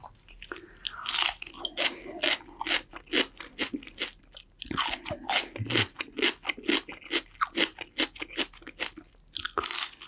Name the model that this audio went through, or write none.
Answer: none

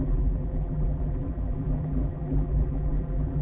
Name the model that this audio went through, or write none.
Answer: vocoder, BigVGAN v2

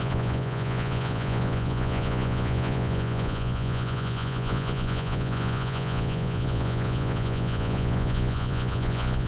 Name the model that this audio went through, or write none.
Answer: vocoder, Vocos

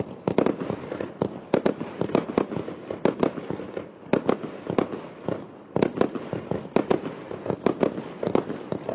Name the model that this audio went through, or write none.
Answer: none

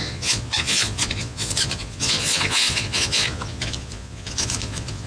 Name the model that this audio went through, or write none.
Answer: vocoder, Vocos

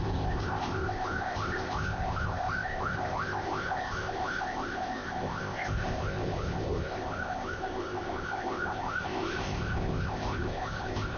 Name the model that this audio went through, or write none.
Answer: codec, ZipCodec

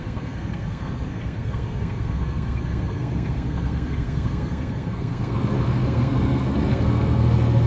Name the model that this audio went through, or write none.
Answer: codec, SNAC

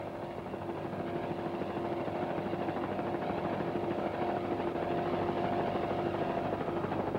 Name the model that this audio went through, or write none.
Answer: none